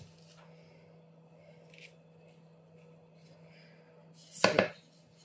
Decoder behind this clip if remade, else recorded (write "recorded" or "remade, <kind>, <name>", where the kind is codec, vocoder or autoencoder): recorded